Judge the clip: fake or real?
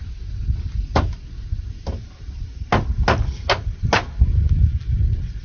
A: real